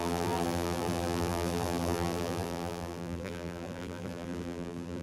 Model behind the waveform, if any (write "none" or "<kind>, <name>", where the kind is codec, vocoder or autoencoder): vocoder, BigVGAN v2